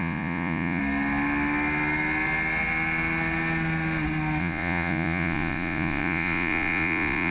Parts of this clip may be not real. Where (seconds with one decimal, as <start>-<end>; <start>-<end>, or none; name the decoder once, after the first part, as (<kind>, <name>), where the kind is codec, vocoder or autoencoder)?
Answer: 0.0-0.8 (vocoder, Vocos); 4.4-7.3